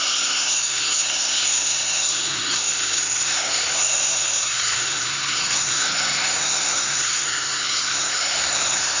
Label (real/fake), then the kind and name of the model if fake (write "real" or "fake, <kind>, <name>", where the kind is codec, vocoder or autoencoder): fake, codec, SNAC